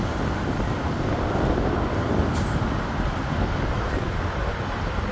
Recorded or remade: recorded